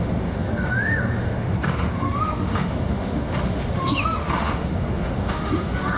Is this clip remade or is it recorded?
remade